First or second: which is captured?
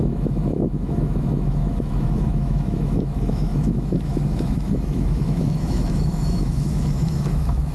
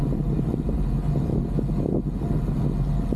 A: second